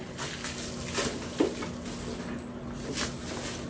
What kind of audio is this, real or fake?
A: real